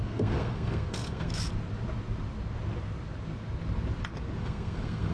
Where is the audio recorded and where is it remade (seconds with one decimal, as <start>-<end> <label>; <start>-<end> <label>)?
0.0-1.3 remade; 1.3-4.4 recorded; 4.4-5.1 remade